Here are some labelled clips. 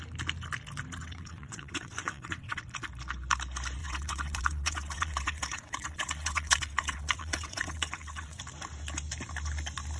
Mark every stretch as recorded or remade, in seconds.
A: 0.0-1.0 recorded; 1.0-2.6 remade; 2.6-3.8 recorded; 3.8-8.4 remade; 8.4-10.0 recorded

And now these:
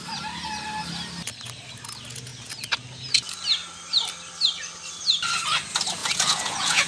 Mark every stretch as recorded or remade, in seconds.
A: 0.0-6.0 recorded; 6.0-6.9 remade

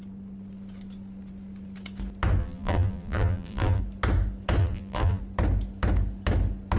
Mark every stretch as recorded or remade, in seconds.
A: 0.0-2.4 recorded; 2.4-3.8 remade; 3.8-4.6 recorded; 4.6-5.2 remade; 5.2-6.8 recorded

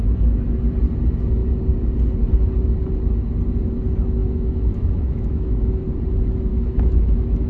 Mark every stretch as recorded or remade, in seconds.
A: 0.0-4.2 recorded; 4.2-5.7 remade; 5.7-6.5 recorded; 6.5-7.5 remade

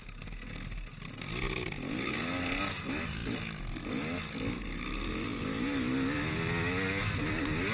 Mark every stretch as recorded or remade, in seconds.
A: 0.0-7.7 recorded

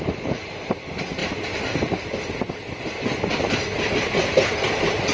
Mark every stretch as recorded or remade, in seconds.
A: 0.0-5.1 recorded

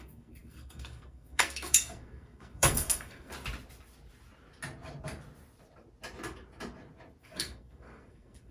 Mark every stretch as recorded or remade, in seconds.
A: 0.0-3.3 remade; 3.3-7.2 recorded; 7.2-8.5 remade

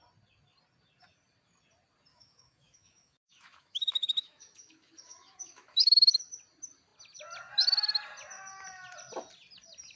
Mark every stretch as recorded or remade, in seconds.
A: 0.0-2.1 recorded; 2.1-6.2 remade; 6.2-10.0 recorded